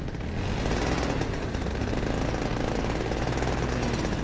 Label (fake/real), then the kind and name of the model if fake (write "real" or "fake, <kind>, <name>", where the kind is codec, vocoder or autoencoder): real